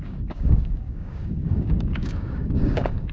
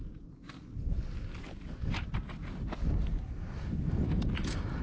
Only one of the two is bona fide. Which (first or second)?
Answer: second